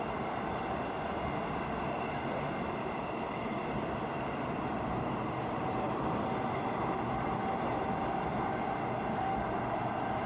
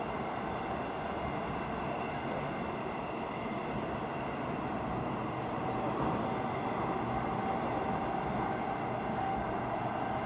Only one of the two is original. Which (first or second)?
second